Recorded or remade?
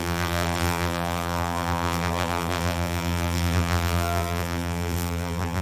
remade